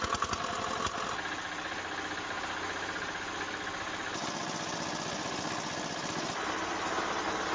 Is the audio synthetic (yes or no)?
no